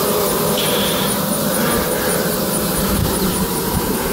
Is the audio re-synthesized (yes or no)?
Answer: yes